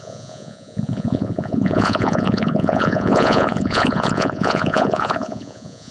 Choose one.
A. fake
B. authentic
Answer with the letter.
A